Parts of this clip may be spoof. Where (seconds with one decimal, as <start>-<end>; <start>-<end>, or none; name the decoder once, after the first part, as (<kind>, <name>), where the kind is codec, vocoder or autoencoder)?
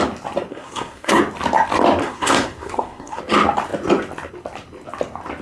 0.5-1.2 (codec, SNAC); 2.0-3.2